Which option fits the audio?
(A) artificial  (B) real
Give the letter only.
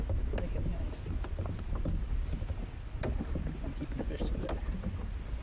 B